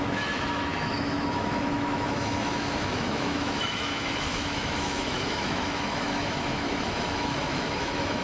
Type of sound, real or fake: fake